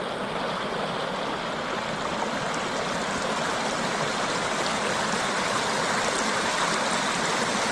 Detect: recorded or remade recorded